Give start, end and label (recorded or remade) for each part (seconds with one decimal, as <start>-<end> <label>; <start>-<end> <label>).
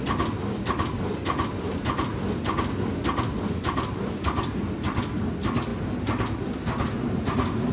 0.0-7.7 recorded